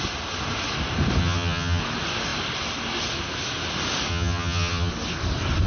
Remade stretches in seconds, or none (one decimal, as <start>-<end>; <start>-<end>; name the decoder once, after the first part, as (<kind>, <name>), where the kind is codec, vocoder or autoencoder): 1.2-1.8 (vocoder, HiFi-GAN); 4.1-4.9